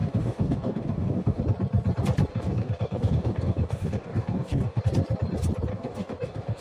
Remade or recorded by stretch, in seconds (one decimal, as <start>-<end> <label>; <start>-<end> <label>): 0.0-1.4 remade; 1.4-2.3 recorded; 2.3-4.8 remade; 4.8-5.7 recorded; 5.7-6.6 remade